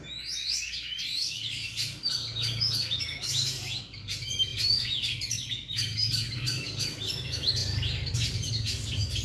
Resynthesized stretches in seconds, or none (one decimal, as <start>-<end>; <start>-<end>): 0.0-9.2

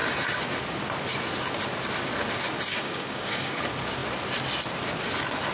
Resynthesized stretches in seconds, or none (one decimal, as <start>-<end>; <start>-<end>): 2.7-3.6

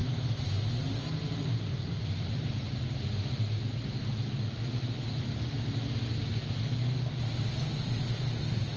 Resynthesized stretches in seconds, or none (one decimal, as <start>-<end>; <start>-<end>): none

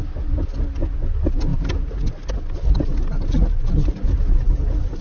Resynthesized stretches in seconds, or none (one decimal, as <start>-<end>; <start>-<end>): none